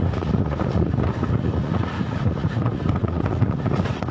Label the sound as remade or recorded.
remade